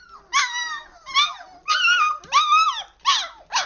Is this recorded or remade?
recorded